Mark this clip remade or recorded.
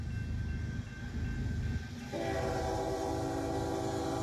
recorded